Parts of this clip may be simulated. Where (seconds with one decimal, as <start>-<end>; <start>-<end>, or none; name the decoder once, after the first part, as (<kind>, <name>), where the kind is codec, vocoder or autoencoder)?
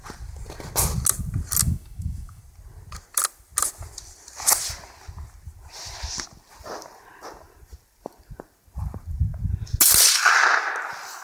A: 1.6-2.4 (autoencoder, DAC-VAE)